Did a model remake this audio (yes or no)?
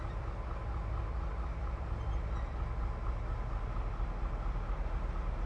no